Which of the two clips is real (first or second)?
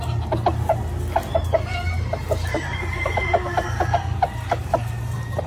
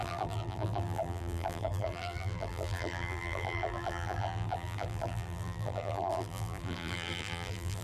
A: first